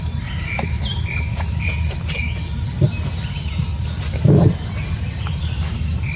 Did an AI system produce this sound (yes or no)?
no